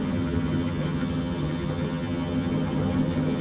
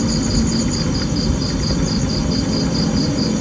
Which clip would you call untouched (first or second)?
second